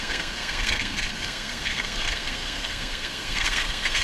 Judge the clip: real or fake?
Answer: fake